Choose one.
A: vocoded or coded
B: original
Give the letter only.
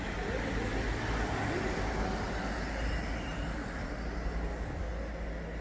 B